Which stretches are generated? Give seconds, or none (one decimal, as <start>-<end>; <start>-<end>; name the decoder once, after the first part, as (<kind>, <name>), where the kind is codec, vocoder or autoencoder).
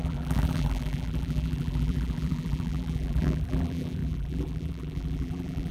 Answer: 0.0-5.7 (vocoder, BigVGAN v2)